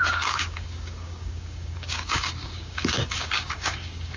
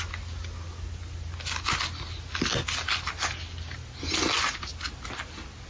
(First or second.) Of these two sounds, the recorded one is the second